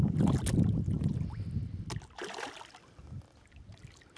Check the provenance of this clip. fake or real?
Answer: real